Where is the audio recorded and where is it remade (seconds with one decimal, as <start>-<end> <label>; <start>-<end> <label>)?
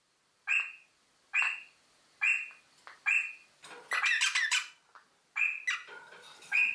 0.0-6.7 recorded